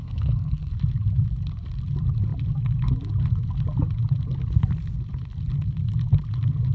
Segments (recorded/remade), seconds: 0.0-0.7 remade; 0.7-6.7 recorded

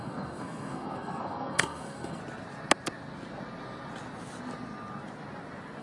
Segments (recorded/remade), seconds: 0.0-2.2 remade; 2.2-5.8 recorded

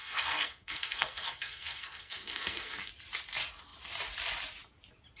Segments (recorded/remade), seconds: 0.0-2.9 remade; 2.9-5.2 recorded

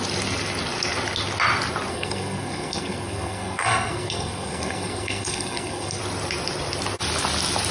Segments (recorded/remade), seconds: 0.0-1.9 recorded; 1.9-6.0 remade; 6.0-7.7 recorded

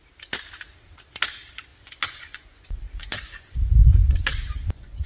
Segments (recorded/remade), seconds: 0.0-1.7 recorded; 1.7-5.1 remade